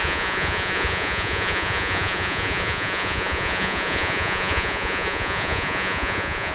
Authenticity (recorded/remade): remade